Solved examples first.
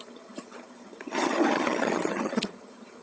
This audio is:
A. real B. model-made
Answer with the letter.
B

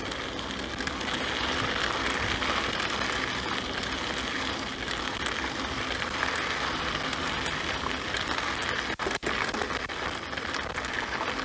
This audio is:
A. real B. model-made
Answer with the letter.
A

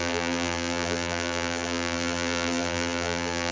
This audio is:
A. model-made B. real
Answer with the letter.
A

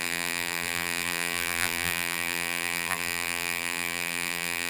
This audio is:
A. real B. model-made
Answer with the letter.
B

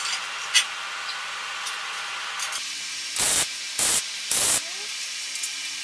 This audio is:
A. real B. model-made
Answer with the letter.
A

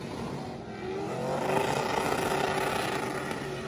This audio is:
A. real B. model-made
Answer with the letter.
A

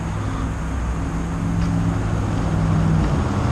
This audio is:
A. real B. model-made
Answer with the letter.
A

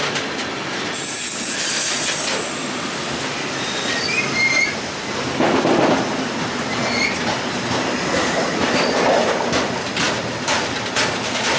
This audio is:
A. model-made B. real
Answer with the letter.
B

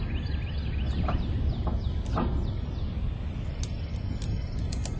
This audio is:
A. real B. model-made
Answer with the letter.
A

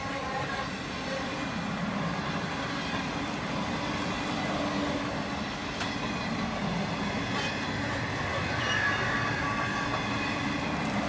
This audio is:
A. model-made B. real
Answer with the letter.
B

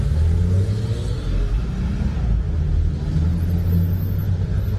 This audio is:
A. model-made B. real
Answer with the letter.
B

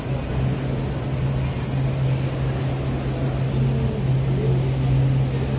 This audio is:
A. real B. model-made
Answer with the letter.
A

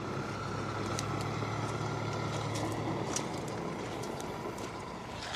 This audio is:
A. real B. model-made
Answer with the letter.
A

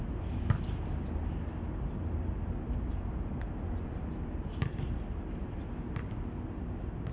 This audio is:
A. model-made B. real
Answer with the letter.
B